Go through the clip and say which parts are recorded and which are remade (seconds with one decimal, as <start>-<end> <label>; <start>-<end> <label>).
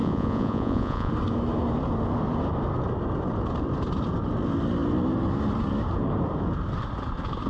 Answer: 0.0-1.1 remade; 1.1-7.5 recorded